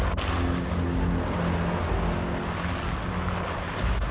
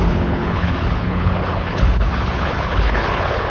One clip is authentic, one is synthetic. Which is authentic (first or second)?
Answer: first